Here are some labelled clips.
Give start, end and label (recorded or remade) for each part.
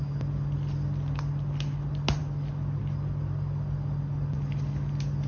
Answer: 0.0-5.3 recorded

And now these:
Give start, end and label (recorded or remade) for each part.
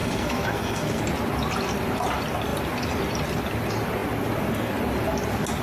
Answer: 0.0-1.0 remade; 1.0-5.6 recorded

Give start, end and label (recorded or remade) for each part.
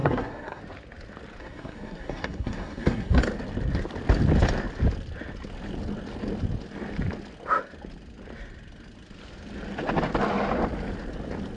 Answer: 0.0-0.6 remade; 0.6-1.4 recorded; 1.4-3.2 remade; 3.2-11.6 recorded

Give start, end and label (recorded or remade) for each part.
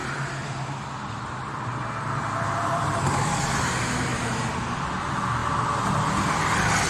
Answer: 0.0-3.4 remade; 3.4-6.9 recorded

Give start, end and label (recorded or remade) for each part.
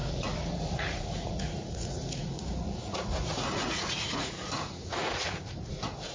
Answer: 0.0-6.1 remade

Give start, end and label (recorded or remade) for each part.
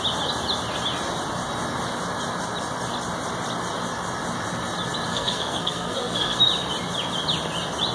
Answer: 0.0-5.1 recorded; 5.1-6.4 remade; 6.4-7.9 recorded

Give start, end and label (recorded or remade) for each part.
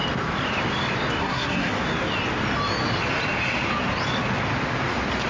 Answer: 0.0-1.2 recorded; 1.2-1.7 remade; 1.7-5.3 recorded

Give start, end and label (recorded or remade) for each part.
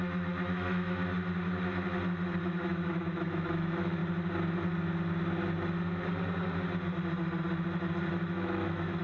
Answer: 0.0-1.0 remade; 1.0-2.4 recorded; 2.4-4.0 remade; 4.0-8.1 recorded; 8.1-9.0 remade